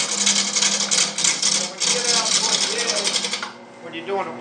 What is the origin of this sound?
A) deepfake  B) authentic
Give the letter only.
B